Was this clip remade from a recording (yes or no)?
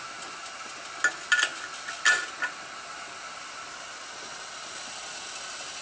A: no